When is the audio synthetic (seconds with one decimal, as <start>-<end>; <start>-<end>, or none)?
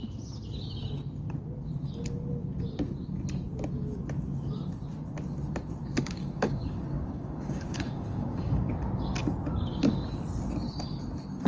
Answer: 6.0-8.7